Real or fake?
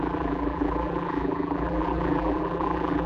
fake